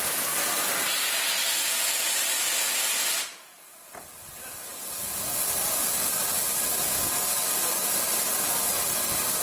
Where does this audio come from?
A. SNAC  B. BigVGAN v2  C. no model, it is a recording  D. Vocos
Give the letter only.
C